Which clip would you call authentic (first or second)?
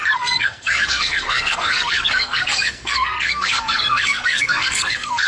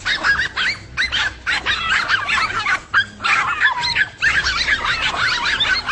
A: second